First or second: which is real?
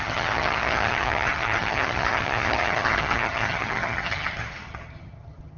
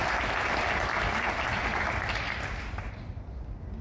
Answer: second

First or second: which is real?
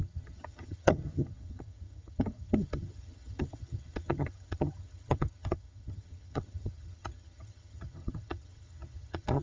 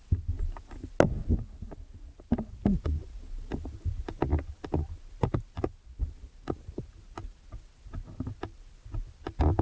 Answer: second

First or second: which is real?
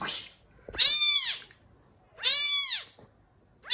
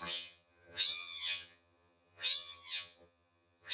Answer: first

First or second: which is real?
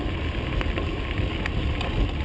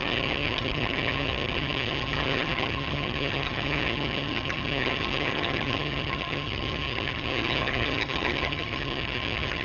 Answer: first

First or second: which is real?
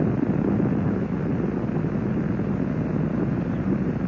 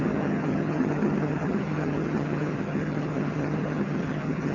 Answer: first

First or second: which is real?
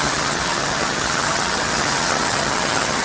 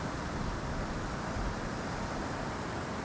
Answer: second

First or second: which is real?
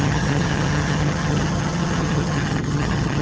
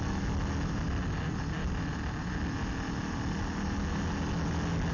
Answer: second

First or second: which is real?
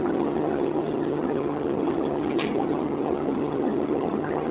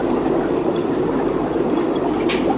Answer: second